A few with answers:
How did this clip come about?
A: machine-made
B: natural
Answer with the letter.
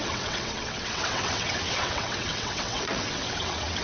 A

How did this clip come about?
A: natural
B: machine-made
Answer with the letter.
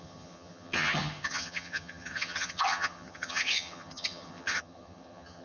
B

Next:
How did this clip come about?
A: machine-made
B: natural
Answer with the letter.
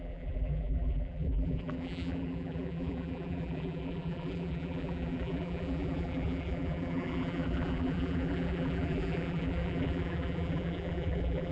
A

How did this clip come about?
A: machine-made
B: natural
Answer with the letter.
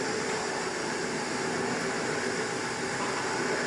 B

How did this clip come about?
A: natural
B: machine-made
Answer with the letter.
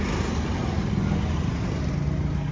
A